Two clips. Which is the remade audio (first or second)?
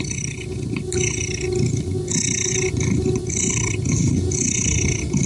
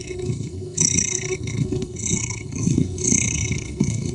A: second